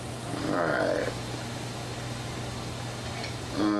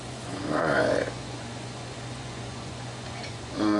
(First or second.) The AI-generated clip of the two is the second